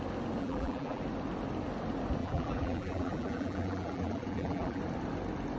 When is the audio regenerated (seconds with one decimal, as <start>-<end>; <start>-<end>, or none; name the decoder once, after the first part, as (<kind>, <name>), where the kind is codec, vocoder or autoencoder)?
0.4-1.0 (vocoder, BigVGAN v2); 2.2-4.8